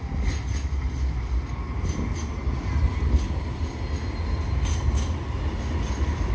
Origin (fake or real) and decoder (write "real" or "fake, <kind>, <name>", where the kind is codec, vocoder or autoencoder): real